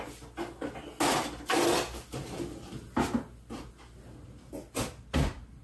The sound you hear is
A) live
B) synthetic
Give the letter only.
A